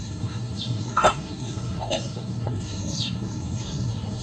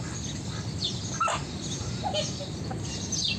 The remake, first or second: first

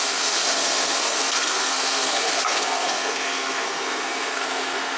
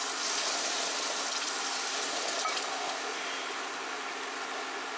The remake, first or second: first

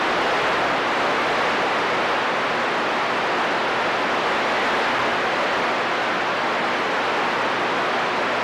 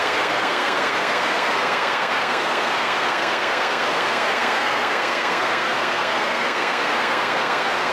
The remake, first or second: second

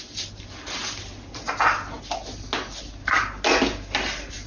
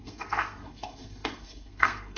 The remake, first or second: second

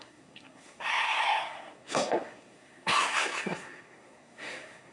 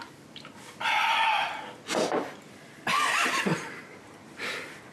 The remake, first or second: first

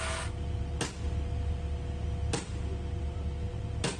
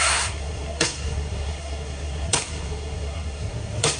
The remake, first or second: second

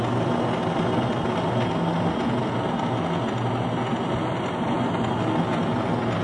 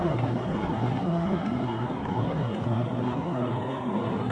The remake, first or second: second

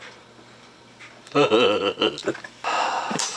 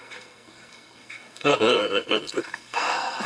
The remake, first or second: second